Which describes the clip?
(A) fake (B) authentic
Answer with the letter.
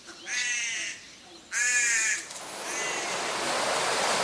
B